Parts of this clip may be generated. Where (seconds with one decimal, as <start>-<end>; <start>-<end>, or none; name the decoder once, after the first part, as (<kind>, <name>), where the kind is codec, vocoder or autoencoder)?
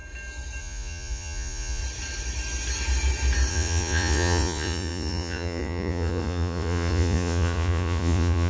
0.6-1.8 (vocoder, Vocos); 3.5-8.5